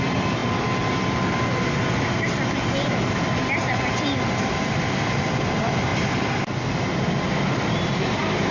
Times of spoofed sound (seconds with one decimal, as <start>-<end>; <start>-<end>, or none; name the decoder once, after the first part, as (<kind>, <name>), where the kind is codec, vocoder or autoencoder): 0.0-0.4 (vocoder, BigVGAN v2); 4.6-8.5